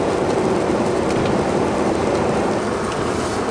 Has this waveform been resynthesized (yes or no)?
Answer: yes